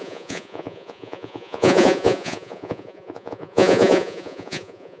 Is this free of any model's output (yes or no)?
no